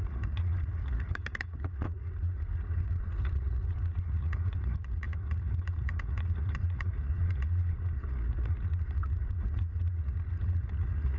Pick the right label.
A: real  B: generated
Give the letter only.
B